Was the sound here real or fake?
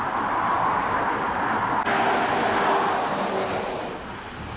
real